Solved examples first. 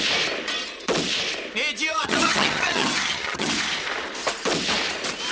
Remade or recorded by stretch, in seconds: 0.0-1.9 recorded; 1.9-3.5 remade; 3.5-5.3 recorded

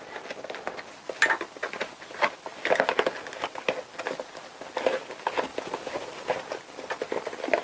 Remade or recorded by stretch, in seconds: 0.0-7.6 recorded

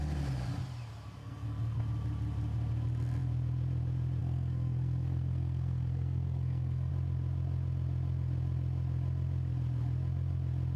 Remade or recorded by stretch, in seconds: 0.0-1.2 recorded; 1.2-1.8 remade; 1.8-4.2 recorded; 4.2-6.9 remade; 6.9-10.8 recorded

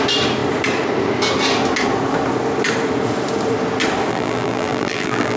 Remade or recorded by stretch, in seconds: 0.0-4.1 recorded; 4.1-5.4 remade

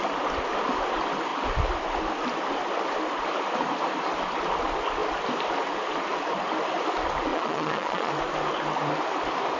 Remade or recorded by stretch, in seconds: 0.0-7.3 recorded; 7.3-8.1 remade; 8.1-9.6 recorded